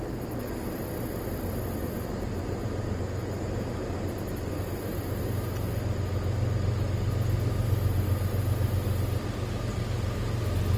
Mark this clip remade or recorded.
recorded